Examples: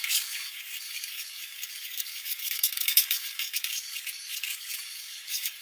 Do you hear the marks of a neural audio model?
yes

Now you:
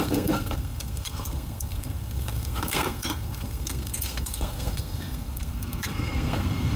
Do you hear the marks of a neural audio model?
yes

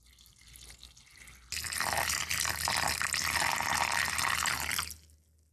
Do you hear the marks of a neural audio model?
no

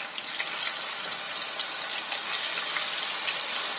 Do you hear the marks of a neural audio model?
no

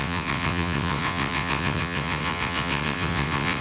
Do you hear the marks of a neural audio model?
yes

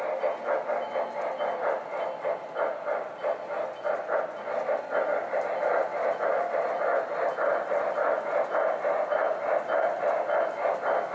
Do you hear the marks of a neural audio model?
no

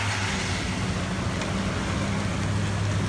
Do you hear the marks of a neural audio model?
no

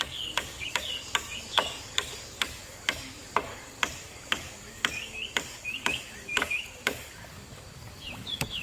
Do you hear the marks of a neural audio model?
yes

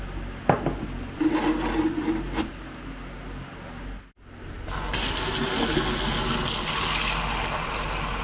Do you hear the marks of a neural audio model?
no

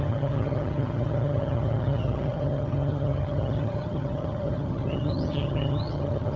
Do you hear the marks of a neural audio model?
yes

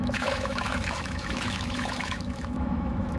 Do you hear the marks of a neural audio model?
yes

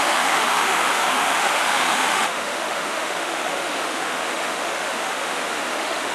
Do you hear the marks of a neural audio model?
yes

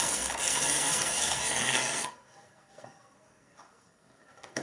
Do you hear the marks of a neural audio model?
yes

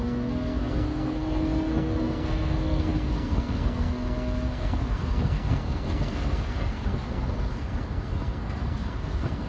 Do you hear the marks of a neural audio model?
yes